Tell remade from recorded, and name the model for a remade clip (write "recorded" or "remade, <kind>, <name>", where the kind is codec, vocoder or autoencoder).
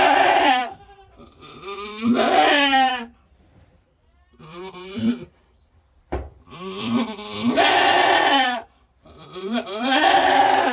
remade, vocoder, BigVGAN v2